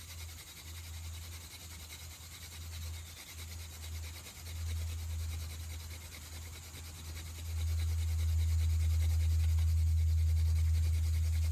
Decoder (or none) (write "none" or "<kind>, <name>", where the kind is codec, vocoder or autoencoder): none